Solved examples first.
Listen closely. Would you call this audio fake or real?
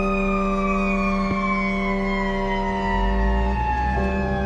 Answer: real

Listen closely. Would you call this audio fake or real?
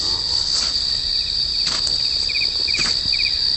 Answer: real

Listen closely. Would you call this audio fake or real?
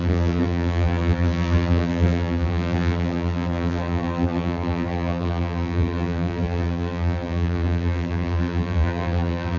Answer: fake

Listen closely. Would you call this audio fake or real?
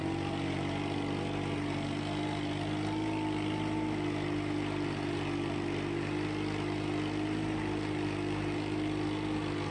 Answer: real